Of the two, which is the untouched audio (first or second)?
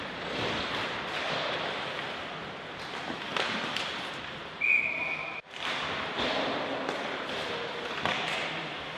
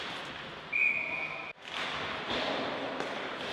second